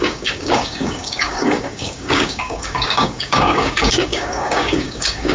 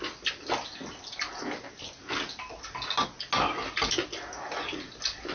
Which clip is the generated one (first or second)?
first